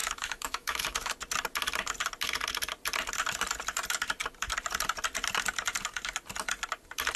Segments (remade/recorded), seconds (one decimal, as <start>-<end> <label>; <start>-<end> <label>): 0.0-1.1 remade; 1.1-7.2 recorded